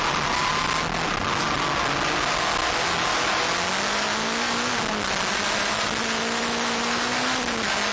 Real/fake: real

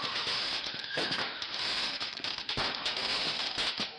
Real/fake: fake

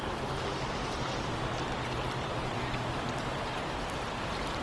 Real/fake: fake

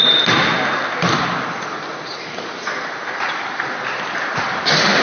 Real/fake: real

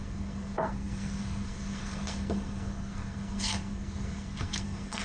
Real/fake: fake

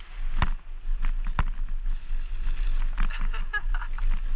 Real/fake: real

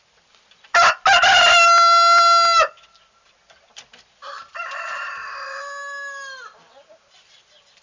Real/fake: real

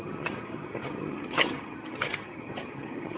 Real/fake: fake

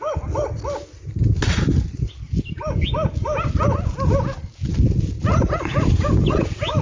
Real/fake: real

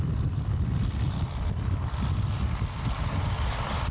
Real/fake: real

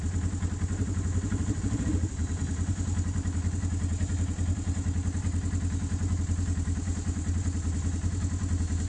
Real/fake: real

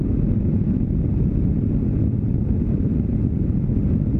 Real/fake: real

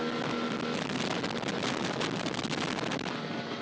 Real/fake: real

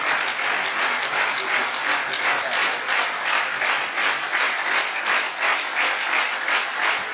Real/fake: real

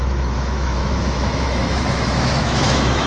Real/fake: fake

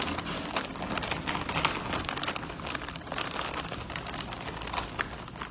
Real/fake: real